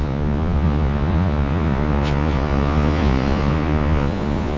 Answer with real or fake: fake